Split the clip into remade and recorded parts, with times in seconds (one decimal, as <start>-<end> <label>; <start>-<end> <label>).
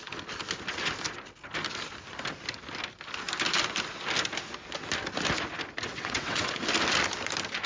0.0-5.9 recorded; 5.9-6.5 remade; 6.5-7.7 recorded